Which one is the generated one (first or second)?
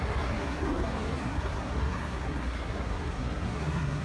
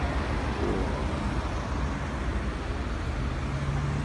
first